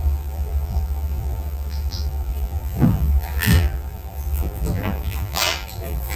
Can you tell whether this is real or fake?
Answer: fake